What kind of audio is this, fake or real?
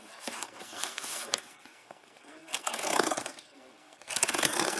fake